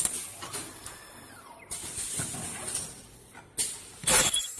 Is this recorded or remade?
recorded